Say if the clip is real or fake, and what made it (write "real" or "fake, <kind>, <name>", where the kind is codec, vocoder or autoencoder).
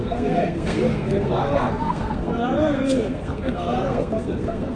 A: fake, codec, SNAC